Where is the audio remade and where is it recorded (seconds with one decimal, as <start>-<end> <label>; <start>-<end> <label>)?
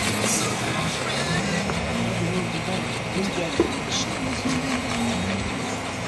0.0-0.5 recorded; 0.5-1.0 remade; 1.0-6.1 recorded